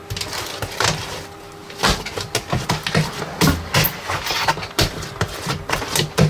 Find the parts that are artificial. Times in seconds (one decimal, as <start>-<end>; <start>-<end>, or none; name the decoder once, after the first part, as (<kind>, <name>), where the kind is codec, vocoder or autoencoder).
none